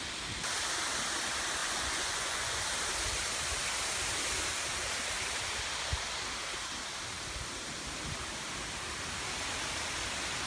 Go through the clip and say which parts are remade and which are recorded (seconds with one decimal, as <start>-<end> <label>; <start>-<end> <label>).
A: 0.0-1.6 recorded; 1.6-2.6 remade; 2.6-10.5 recorded